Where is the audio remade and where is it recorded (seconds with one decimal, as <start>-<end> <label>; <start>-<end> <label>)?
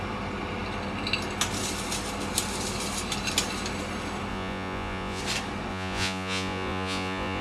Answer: 0.0-4.3 recorded; 4.3-5.2 remade; 5.2-5.7 recorded; 5.7-7.4 remade